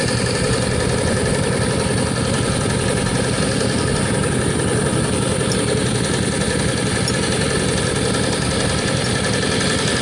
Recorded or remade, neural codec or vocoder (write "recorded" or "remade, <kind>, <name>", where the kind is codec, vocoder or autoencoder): recorded